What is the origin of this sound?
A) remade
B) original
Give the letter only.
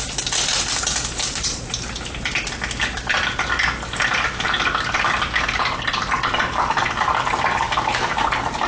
B